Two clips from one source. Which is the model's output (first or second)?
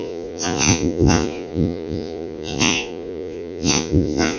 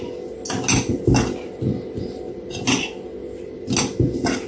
first